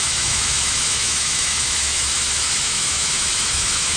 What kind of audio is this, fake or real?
fake